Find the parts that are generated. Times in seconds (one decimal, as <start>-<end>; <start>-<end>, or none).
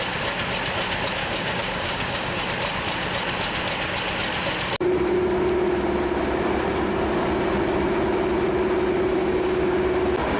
1.2-2.4; 9.1-9.7